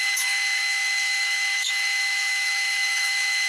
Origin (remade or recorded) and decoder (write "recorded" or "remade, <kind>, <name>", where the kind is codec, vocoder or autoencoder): remade, autoencoder, DAC-VAE